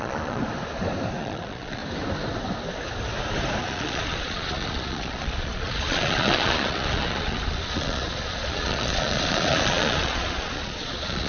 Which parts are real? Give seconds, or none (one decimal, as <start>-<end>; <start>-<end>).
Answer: 0.4-1.2; 1.8-3.6